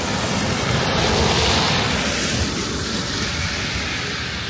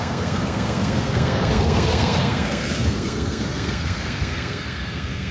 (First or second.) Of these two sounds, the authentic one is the first